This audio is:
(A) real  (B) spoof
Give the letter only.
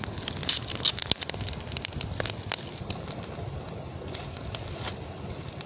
A